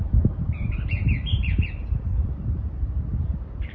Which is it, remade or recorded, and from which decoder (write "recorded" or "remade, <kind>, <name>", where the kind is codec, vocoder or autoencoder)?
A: remade, vocoder, BigVGAN v2